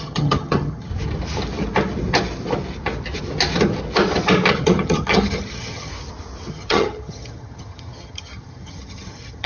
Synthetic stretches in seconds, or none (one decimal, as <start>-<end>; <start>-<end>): 0.0-0.9; 4.5-5.9; 6.5-9.5